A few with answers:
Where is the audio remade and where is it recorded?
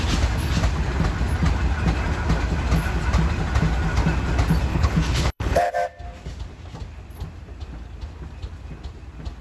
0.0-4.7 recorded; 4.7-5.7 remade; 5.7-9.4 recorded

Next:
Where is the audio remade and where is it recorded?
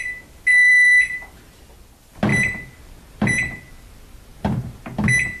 0.0-0.5 recorded; 0.5-1.5 remade; 1.5-2.3 recorded; 2.3-3.7 remade; 3.7-5.4 recorded